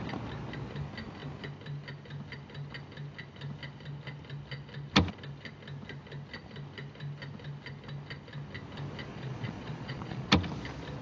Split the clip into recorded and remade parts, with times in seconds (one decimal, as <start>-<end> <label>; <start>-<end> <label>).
0.0-9.1 recorded; 9.1-10.3 remade; 10.3-11.0 recorded